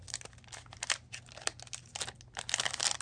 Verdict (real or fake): real